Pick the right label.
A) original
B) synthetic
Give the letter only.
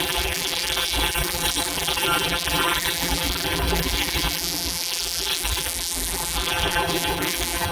B